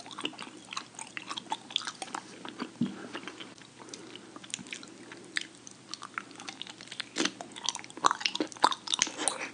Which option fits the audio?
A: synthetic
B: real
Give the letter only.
B